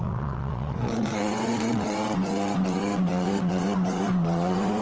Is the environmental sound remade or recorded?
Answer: remade